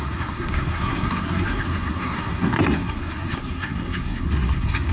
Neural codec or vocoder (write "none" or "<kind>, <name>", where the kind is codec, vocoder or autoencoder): codec, SNAC